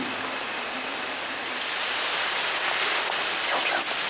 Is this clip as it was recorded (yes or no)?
yes